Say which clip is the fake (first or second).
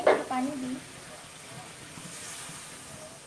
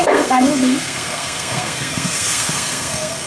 second